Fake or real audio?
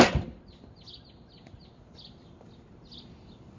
real